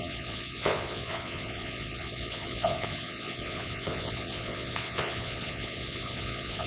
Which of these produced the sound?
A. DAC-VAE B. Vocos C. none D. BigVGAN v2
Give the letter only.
B